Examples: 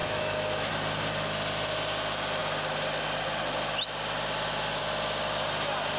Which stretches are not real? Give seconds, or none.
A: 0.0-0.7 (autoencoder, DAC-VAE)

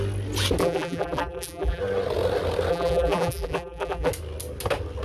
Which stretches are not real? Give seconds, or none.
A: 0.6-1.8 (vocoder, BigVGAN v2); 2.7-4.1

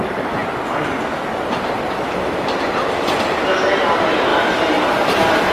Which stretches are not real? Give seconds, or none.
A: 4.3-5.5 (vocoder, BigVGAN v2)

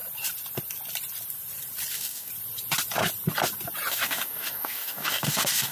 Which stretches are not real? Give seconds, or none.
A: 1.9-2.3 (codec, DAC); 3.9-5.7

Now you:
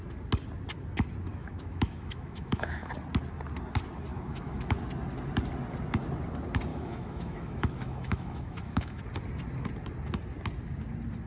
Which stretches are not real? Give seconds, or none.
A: 1.4-2.9 (autoencoder, DAC-VAE); 4.1-4.8; 6.7-9.0

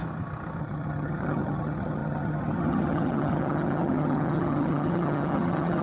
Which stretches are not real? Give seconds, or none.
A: 0.6-5.8 (vocoder, HiFi-GAN)